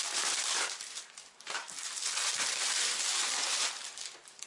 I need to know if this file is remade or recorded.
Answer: remade